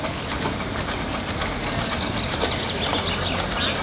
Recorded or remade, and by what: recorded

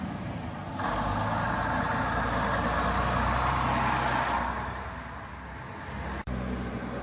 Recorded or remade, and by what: recorded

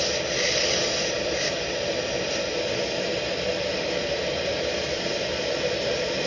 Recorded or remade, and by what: recorded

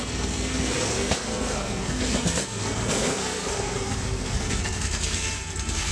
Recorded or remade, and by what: remade, codec, SNAC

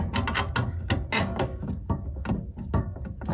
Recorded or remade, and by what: recorded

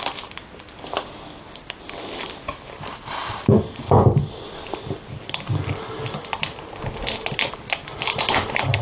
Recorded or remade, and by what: recorded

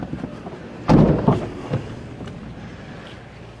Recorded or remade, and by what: recorded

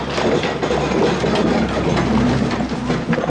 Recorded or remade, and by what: recorded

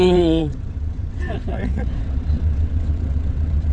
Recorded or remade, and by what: remade, vocoder, WaveNeXt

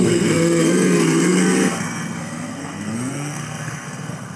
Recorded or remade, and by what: remade, codec, SNAC